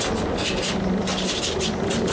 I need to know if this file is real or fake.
real